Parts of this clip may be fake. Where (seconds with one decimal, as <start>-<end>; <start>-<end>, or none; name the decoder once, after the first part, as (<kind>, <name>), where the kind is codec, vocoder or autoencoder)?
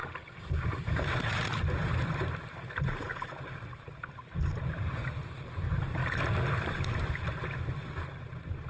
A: 0.0-6.0 (vocoder, BigVGAN v2); 7.5-8.7